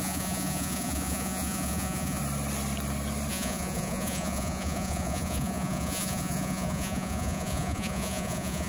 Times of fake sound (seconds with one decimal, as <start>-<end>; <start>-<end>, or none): 0.0-2.2; 3.3-8.7